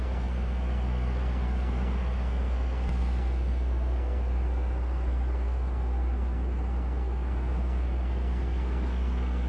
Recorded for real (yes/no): no